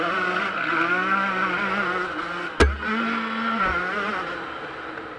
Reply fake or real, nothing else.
real